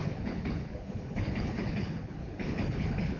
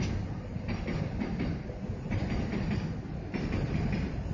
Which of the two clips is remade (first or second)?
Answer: first